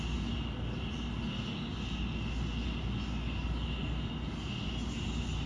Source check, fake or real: real